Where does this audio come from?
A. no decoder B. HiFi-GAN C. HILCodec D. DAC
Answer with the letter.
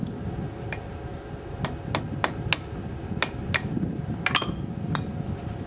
A